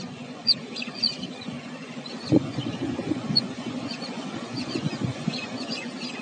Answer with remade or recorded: remade